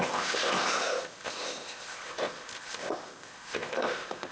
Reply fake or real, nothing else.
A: fake